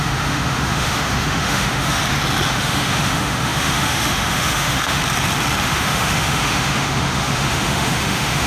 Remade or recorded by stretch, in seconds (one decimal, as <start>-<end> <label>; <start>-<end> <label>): 0.0-2.0 remade; 2.0-2.5 recorded; 2.5-5.0 remade; 5.0-5.6 recorded; 5.6-8.5 remade